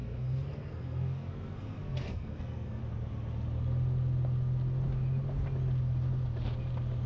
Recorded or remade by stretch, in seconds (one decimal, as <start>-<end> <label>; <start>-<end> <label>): 0.0-2.8 remade; 2.8-7.1 recorded